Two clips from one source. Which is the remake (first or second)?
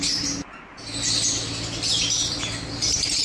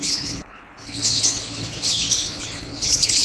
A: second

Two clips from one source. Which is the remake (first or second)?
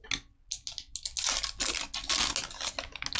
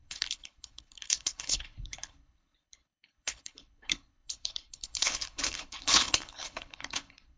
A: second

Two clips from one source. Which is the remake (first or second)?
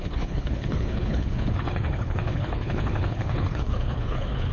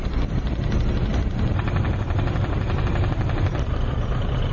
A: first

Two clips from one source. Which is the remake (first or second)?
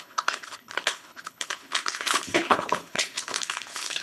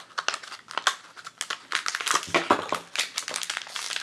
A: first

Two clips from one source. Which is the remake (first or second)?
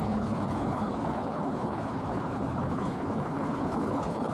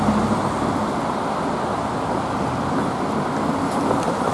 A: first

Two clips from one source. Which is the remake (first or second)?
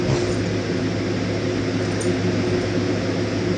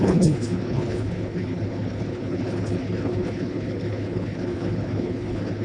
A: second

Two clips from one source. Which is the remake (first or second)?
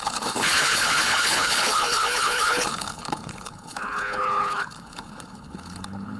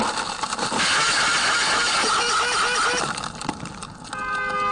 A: first